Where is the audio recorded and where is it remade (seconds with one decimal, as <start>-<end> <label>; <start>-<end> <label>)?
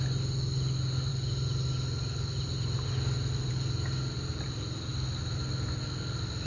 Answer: 0.0-6.5 recorded